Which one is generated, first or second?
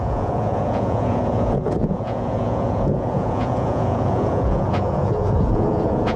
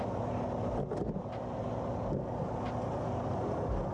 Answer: first